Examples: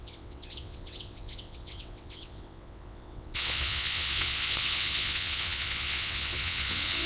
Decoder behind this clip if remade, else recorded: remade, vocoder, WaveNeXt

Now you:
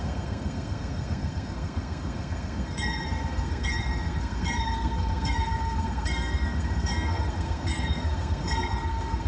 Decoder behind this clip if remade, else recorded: remade, codec, SNAC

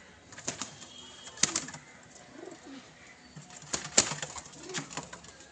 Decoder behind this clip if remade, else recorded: recorded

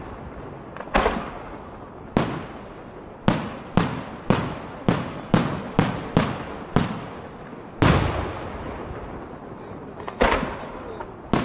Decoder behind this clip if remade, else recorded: recorded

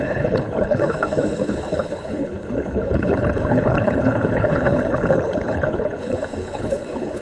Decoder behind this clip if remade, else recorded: remade, codec, HILCodec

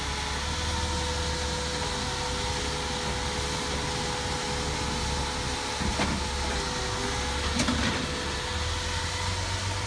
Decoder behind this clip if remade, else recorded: recorded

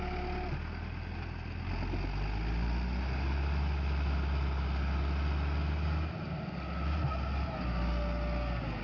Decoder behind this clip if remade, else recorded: recorded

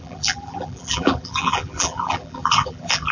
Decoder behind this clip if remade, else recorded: remade, vocoder, BigVGAN v2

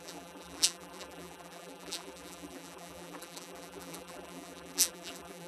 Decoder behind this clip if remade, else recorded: remade, vocoder, BigVGAN v2